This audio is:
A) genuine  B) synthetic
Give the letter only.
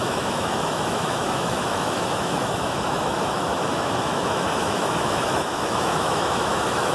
B